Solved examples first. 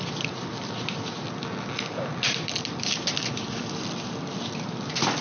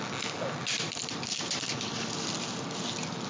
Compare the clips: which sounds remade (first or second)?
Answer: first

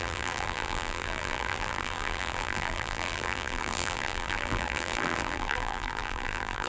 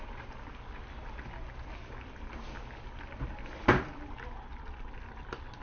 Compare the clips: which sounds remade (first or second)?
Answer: first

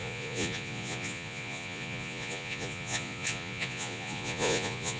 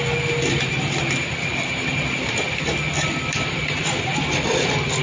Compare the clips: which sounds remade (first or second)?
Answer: first